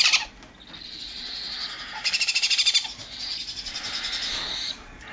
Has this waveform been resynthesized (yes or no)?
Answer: no